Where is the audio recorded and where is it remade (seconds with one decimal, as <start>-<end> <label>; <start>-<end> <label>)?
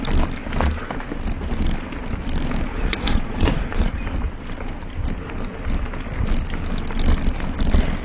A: 0.0-2.7 recorded; 2.7-3.9 remade; 3.9-8.0 recorded